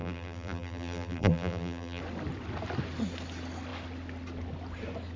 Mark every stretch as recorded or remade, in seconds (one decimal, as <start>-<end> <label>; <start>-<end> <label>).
0.0-2.0 remade; 2.0-5.2 recorded